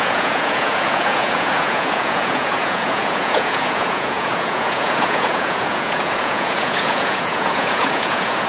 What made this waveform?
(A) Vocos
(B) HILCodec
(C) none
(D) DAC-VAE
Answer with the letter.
A